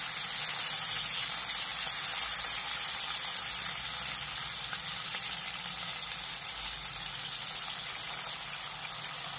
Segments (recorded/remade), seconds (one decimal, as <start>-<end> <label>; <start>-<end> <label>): 0.0-9.4 recorded